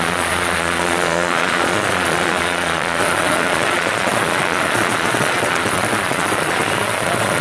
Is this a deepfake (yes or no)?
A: yes